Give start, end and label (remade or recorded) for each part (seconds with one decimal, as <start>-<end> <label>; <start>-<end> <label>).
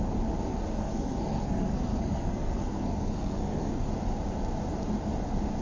0.0-0.5 recorded; 0.5-3.9 remade; 3.9-5.6 recorded